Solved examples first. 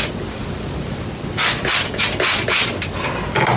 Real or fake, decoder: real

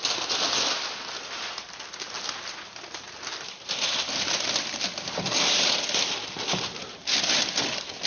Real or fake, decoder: real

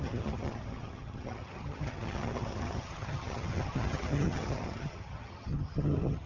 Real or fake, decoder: fake, vocoder, HiFi-GAN